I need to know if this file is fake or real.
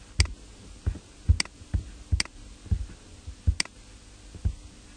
real